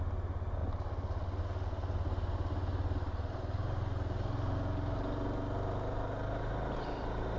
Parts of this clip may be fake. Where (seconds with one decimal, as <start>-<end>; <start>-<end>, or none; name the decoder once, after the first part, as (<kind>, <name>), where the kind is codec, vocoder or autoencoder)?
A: none